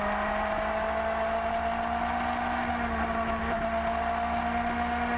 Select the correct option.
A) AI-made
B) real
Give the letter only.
B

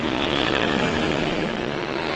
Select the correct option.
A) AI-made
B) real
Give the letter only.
A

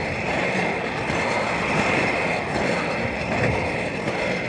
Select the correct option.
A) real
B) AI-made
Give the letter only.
A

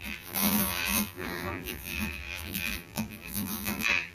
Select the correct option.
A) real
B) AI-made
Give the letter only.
B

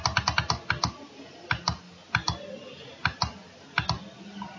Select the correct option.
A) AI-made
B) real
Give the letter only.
B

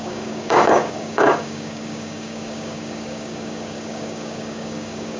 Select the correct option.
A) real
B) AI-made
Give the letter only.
B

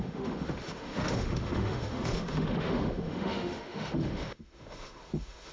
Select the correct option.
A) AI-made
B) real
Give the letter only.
A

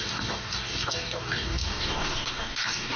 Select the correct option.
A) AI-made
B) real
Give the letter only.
A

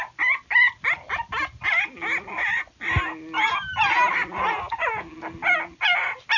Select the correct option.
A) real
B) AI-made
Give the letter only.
A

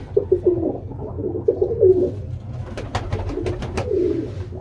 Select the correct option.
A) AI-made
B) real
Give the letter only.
A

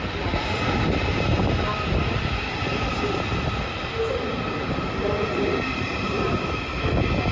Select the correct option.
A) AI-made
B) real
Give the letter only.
B